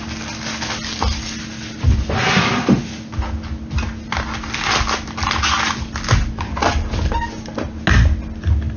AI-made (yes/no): no